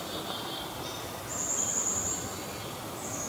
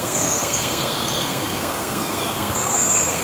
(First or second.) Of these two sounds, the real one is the first